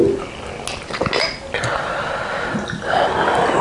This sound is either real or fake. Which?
real